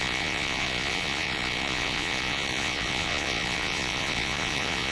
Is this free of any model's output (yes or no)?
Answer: no